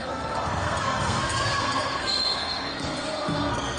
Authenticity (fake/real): fake